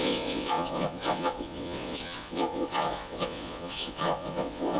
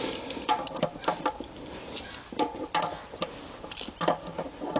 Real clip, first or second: second